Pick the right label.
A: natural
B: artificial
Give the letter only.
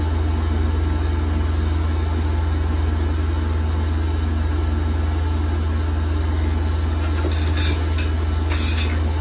A